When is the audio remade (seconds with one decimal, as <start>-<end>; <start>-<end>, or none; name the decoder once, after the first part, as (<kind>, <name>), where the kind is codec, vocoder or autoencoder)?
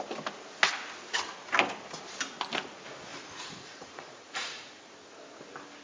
3.1-4.9 (vocoder, Vocos)